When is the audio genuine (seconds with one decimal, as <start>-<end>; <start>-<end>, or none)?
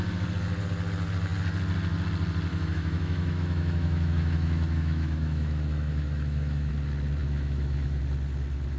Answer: 0.0-2.5; 6.7-7.2; 8.0-8.8